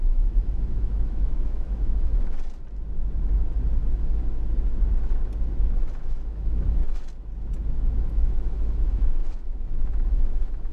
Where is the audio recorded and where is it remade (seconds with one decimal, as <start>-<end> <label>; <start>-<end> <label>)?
0.0-2.1 remade; 2.1-6.0 recorded; 6.0-6.8 remade; 6.8-8.2 recorded; 8.2-9.2 remade; 9.2-9.8 recorded; 9.8-10.7 remade